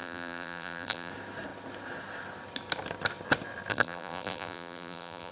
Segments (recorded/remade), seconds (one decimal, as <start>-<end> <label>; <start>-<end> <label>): 0.0-1.1 remade; 1.1-3.7 recorded; 3.7-5.3 remade